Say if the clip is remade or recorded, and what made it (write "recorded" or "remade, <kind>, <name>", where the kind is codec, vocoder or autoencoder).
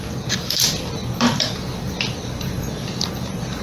remade, vocoder, BigVGAN v2